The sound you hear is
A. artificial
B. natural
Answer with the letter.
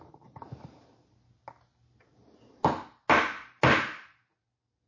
B